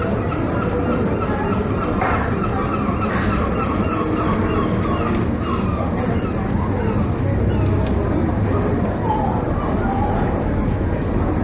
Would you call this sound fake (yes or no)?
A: no